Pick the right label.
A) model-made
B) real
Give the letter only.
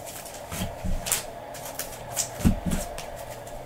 A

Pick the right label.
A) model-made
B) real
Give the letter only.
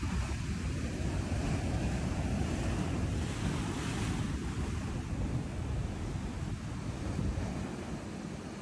B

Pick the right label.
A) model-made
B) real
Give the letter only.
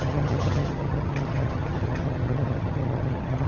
A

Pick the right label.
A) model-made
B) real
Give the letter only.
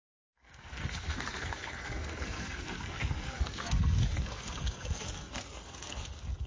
A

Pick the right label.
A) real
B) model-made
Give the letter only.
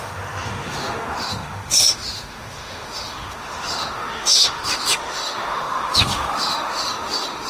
B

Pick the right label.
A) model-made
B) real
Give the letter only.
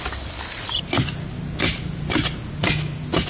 B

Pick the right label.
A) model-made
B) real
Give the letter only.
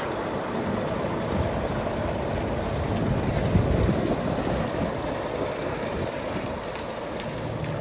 B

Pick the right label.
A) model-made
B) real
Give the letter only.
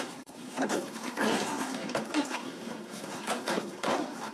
A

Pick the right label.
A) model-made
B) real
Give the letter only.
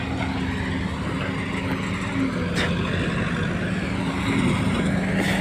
B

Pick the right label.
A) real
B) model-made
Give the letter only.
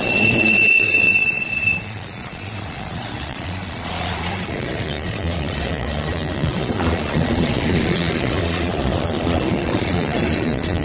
B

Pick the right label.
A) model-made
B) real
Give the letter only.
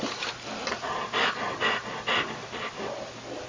B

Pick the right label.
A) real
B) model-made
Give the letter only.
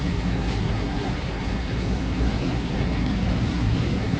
B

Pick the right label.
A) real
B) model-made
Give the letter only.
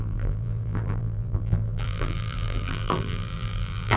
B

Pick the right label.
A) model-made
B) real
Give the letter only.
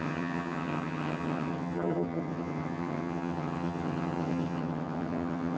A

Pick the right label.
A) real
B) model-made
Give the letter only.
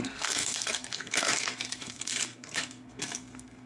B